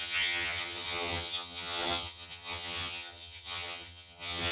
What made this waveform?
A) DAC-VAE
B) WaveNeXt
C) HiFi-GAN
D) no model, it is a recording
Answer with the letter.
C